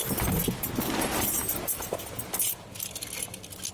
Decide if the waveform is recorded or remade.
recorded